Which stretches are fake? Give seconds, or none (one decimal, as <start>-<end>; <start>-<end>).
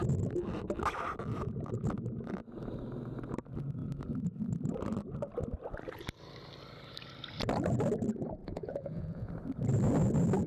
8.4-9.3